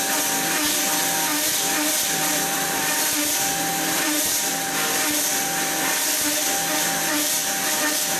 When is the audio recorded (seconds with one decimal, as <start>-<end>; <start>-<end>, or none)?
0.0-1.3; 2.9-3.7; 4.5-5.3; 5.8-7.4